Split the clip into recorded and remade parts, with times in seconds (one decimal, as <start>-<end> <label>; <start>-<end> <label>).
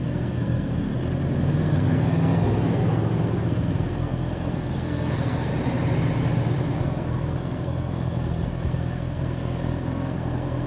0.0-0.9 remade; 0.9-1.6 recorded; 1.6-5.5 remade; 5.5-6.7 recorded; 6.7-10.7 remade